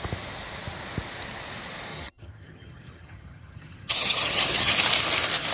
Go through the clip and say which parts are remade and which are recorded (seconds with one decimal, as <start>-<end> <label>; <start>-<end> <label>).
0.0-1.9 recorded; 1.9-4.7 remade; 4.7-5.5 recorded